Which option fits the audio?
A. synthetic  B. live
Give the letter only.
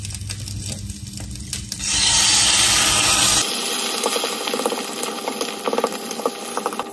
B